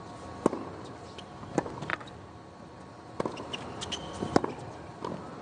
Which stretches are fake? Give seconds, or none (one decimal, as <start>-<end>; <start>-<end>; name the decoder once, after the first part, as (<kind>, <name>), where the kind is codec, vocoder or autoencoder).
none